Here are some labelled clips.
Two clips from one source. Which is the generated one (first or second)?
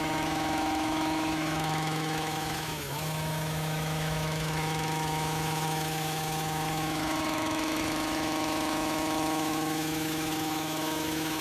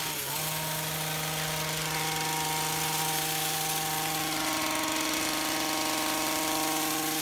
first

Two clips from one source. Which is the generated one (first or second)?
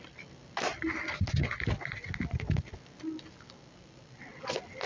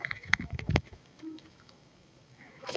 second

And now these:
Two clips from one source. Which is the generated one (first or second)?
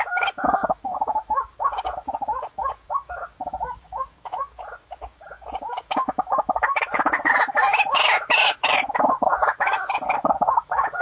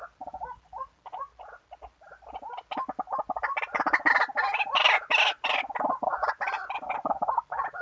first